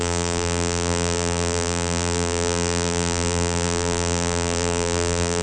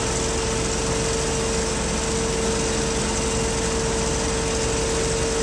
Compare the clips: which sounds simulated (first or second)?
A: first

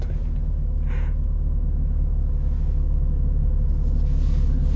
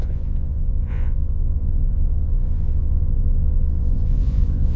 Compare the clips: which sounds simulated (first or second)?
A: second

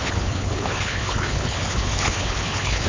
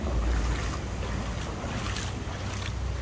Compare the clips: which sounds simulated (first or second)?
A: first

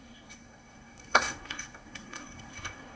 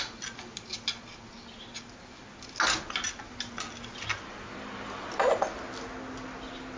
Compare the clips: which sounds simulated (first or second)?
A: first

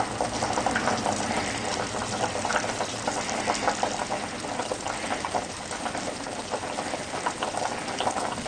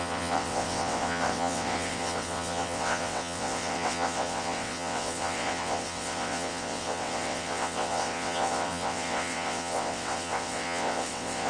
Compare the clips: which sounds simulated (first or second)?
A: second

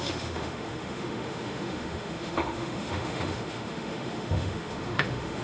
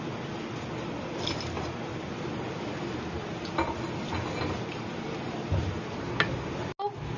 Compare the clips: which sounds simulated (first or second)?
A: first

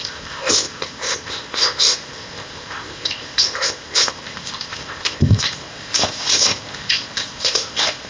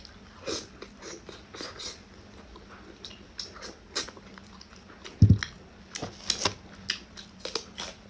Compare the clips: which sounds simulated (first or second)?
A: first